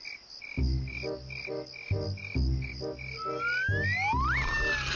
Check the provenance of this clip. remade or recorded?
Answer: recorded